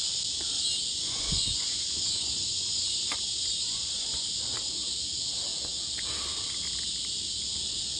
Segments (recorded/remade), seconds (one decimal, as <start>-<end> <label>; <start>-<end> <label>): 0.0-0.9 recorded; 0.9-4.6 remade; 4.6-8.0 recorded

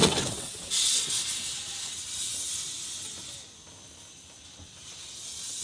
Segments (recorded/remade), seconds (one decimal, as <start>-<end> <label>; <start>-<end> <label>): 0.0-1.1 remade; 1.1-5.6 recorded

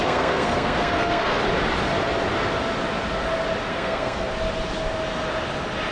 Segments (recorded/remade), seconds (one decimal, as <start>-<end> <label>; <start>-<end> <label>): 0.0-1.4 remade; 1.4-3.7 recorded; 3.7-4.3 remade; 4.3-5.9 recorded

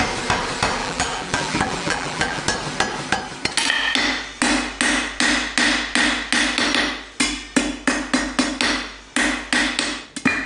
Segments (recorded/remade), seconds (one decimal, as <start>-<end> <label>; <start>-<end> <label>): 0.0-0.8 recorded; 0.8-2.4 remade; 2.4-10.5 recorded